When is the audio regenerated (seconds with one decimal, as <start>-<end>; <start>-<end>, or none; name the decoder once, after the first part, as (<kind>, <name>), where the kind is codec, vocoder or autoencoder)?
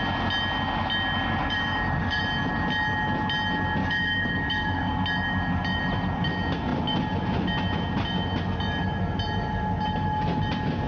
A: 1.4-2.2 (codec, DAC); 3.8-4.9